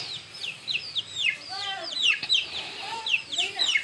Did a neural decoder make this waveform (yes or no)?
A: yes